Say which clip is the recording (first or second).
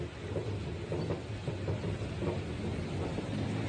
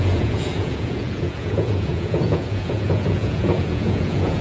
first